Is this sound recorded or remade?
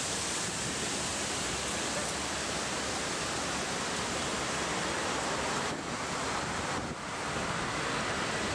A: recorded